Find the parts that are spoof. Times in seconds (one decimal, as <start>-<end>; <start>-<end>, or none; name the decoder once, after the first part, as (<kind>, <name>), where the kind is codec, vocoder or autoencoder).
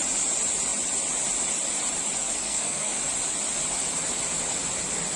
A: 2.2-3.0 (codec, SNAC)